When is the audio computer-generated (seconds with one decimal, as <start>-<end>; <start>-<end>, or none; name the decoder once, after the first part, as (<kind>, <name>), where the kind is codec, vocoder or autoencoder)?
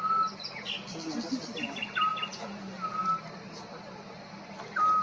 none